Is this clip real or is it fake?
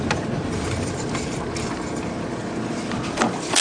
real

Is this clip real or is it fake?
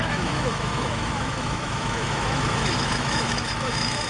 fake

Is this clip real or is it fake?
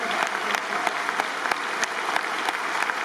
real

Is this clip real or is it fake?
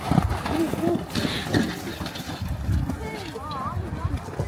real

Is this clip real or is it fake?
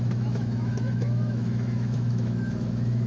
fake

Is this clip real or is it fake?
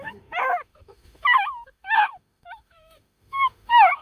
fake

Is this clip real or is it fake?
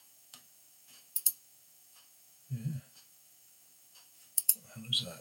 fake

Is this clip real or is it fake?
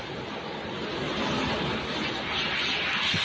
real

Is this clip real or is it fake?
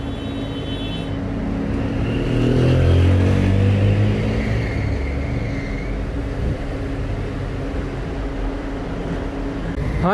real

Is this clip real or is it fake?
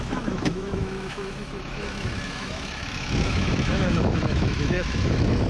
fake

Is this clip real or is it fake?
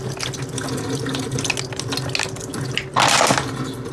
real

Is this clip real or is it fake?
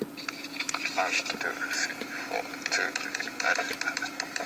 real